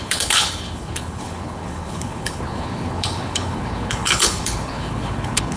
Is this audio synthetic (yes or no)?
yes